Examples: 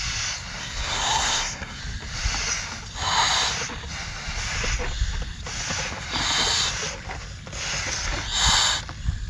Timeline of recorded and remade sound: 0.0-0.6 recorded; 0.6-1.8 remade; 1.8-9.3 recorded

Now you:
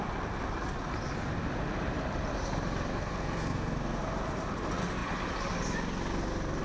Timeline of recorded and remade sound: 0.0-2.9 recorded; 2.9-4.0 remade; 4.0-6.6 recorded